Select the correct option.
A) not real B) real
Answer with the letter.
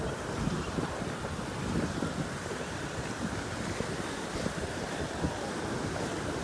A